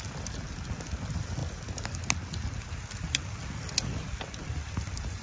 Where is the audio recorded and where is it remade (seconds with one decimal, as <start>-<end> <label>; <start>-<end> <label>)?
0.0-5.2 recorded